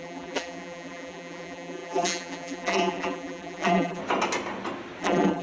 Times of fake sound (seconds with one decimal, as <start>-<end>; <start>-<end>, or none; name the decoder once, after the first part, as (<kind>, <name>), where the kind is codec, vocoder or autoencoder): 0.0-4.0 (vocoder, BigVGAN v2); 5.0-5.4